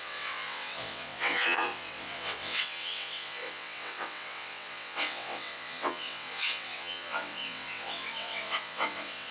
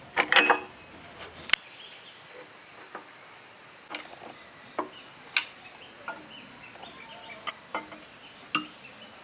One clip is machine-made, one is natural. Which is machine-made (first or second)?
first